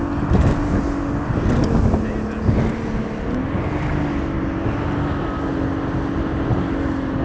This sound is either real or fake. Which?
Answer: real